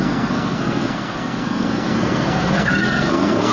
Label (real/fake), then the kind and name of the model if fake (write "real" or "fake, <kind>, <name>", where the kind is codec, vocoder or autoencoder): fake, codec, SNAC